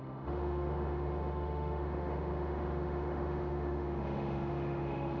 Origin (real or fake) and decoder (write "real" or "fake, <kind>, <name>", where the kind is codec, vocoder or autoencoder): fake, autoencoder, DAC-VAE